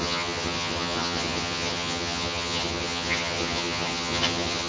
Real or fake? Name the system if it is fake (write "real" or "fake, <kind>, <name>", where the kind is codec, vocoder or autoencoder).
fake, vocoder, HiFi-GAN